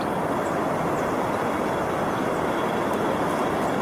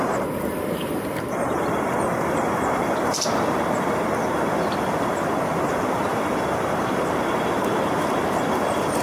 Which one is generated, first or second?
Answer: second